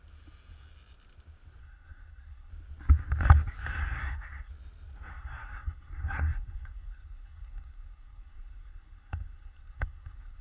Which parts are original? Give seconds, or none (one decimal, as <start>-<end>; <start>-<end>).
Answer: 0.0-1.6; 2.5-3.8; 4.5-5.1